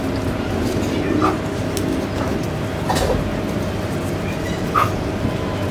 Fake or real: real